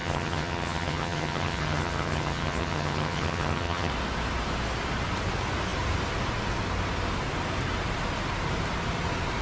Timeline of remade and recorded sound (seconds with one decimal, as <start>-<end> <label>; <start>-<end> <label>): 0.0-3.9 remade; 3.9-9.4 recorded